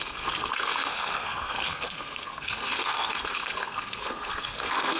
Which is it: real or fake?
fake